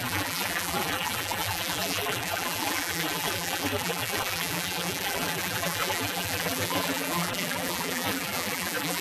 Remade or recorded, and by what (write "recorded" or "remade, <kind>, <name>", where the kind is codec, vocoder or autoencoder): remade, vocoder, BigVGAN v2